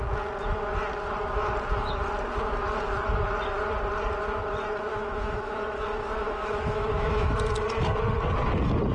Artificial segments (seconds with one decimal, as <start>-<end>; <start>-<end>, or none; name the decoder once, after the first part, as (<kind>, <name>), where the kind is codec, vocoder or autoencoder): 4.9-7.4 (autoencoder, DAC-VAE)